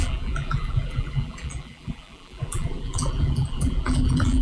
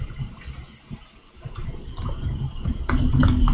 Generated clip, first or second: first